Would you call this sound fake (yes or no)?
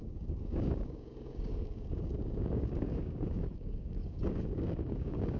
yes